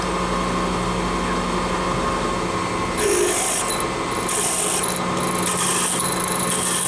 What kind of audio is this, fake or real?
real